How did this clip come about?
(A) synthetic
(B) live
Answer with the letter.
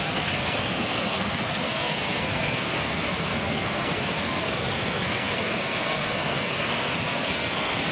A